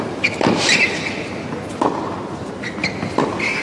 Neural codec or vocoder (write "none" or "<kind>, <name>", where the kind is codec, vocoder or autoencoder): none